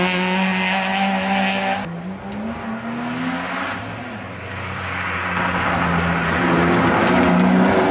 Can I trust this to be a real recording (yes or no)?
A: yes